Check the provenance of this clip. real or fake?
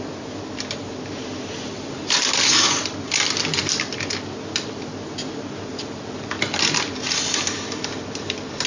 real